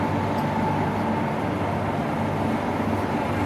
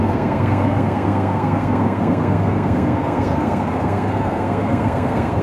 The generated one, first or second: second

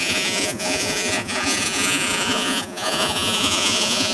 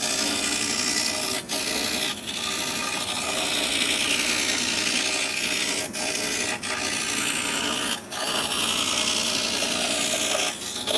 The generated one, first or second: first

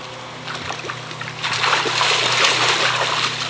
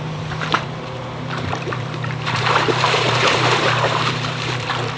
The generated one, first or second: second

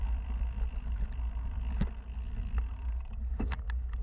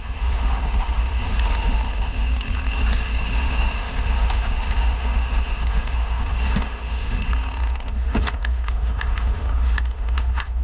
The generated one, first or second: second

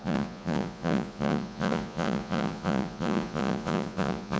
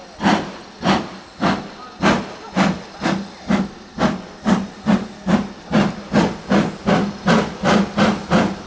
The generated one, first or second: first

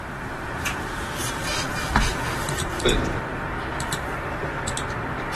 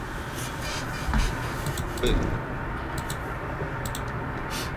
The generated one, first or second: first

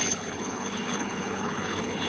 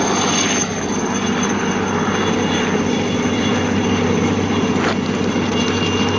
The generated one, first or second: first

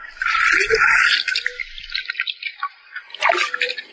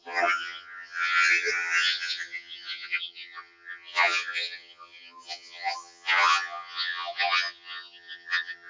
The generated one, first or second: second